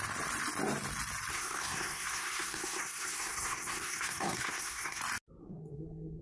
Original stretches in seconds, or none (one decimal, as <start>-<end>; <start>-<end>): 0.0-1.3; 5.0-5.4